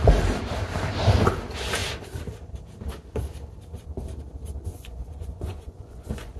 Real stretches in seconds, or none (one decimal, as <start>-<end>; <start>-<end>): 0.0-4.7